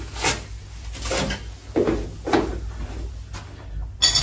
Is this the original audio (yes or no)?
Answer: yes